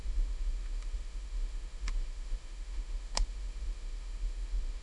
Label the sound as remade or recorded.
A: remade